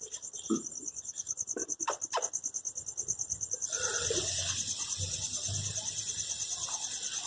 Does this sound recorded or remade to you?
recorded